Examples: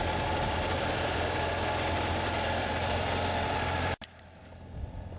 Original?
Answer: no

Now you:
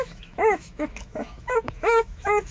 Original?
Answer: no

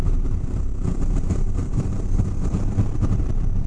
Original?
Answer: no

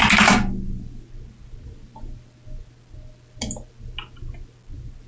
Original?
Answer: yes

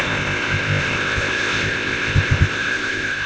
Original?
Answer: no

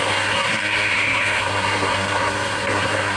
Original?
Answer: no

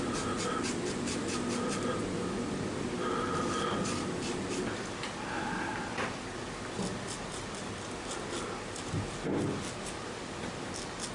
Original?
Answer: yes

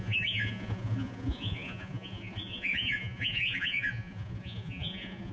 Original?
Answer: no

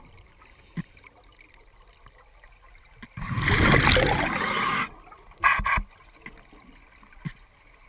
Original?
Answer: yes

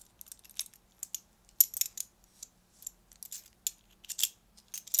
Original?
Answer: yes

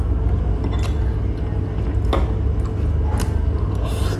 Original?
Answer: yes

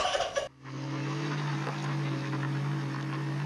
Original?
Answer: yes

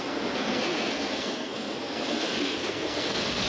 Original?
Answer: no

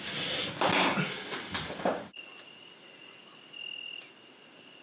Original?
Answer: yes